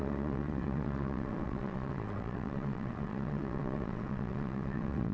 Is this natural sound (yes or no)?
no